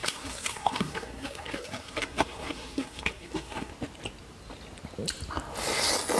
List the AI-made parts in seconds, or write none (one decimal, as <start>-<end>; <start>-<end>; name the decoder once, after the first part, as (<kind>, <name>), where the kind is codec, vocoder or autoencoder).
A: 0.0-3.7 (codec, SNAC)